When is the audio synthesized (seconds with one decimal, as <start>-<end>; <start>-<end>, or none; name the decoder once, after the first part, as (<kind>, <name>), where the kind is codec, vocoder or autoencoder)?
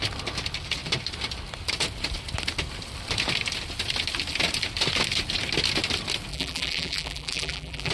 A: 6.3-7.9 (vocoder, BigVGAN v2)